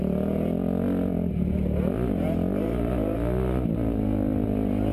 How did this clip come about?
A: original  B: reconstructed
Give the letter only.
A